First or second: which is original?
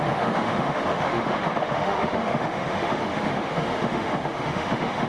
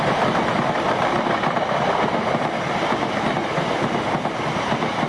second